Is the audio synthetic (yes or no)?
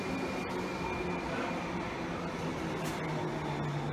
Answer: no